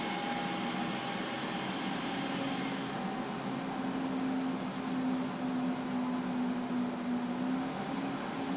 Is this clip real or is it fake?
real